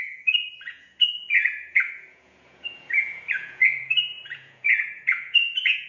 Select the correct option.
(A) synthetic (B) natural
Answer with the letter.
A